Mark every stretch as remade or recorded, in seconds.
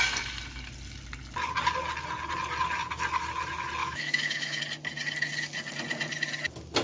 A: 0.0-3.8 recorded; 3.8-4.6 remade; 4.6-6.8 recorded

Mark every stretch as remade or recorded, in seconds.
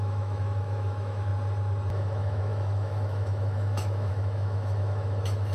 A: 0.0-1.3 remade; 1.3-1.9 recorded; 1.9-5.5 remade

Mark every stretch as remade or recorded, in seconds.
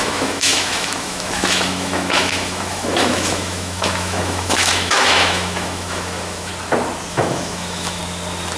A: 0.0-6.5 remade; 6.5-7.1 recorded; 7.1-8.0 remade; 8.0-8.6 recorded